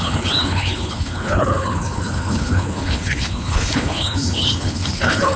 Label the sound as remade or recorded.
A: remade